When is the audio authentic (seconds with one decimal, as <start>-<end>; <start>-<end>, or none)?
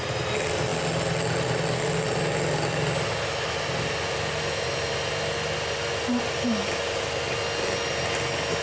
0.0-8.6